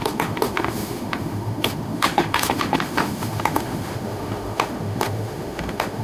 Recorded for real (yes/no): no